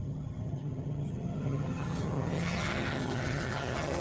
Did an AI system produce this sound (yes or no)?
yes